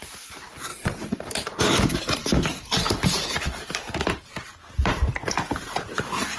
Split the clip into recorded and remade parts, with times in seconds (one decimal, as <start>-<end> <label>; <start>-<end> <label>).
0.0-0.7 recorded; 0.7-1.3 remade; 1.3-6.4 recorded